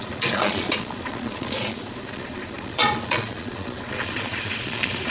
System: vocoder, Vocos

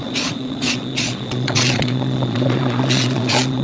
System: vocoder, Vocos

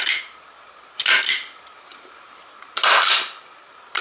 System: none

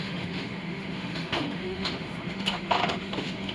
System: autoencoder, DAC-VAE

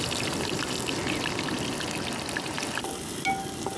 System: none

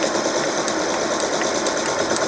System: none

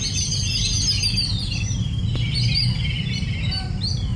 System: none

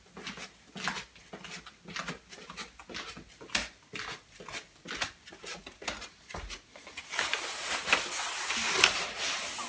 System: none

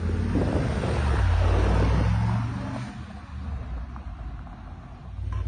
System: none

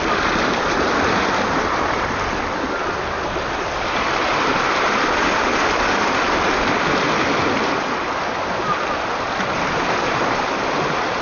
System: none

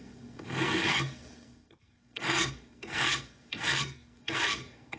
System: codec, SNAC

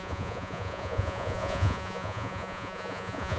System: vocoder, Vocos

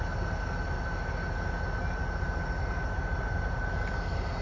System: none